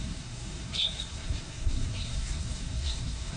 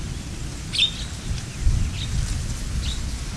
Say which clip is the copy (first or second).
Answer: first